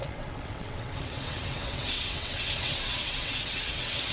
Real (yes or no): no